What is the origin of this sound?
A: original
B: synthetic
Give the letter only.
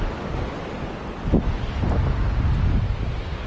A